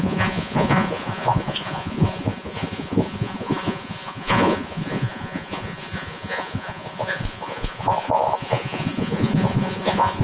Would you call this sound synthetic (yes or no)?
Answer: yes